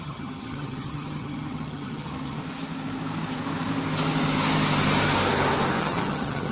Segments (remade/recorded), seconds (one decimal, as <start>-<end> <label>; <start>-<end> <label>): 0.0-2.4 remade; 2.4-5.8 recorded; 5.8-6.5 remade